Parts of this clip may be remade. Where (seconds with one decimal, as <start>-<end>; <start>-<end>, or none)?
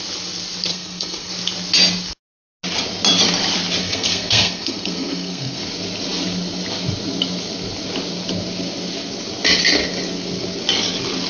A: 0.7-1.3; 3.8-5.6